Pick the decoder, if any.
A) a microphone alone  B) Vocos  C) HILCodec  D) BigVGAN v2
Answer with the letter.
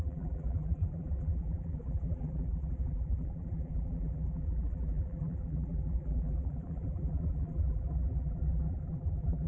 D